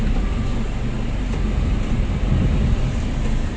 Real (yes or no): yes